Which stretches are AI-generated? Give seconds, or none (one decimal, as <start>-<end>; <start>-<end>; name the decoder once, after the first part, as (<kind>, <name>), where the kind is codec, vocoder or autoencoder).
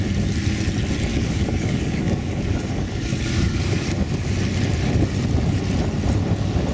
1.1-4.1 (codec, DAC)